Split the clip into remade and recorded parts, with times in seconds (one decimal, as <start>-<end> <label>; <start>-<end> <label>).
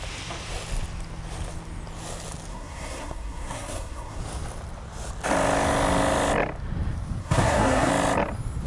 0.0-2.5 recorded; 2.5-4.2 remade; 4.2-7.2 recorded; 7.2-7.9 remade; 7.9-8.7 recorded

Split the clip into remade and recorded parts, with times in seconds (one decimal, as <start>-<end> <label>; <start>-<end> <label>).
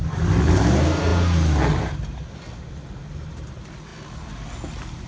0.0-5.1 recorded